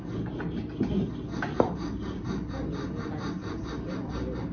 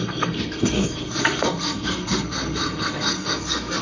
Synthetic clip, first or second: second